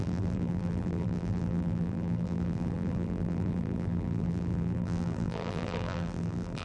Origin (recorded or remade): remade